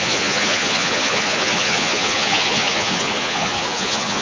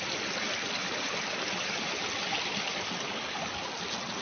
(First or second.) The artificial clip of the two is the first